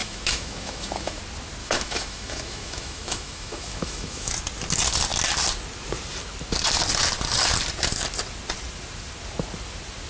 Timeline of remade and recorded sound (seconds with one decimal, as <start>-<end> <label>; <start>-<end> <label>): 0.0-1.2 remade; 1.2-1.6 recorded; 1.6-4.3 remade; 4.3-10.1 recorded